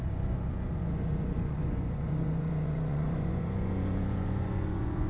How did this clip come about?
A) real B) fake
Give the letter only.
B